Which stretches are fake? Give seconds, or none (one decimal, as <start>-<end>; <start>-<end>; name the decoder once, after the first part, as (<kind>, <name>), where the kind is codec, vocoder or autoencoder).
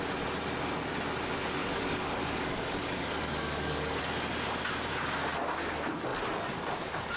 1.6-4.0 (codec, DAC)